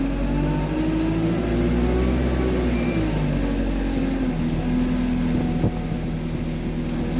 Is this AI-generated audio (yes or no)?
no